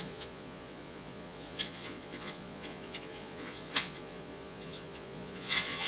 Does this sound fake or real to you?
fake